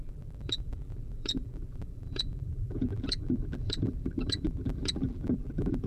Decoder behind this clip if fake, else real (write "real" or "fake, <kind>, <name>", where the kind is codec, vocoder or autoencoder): fake, vocoder, BigVGAN v2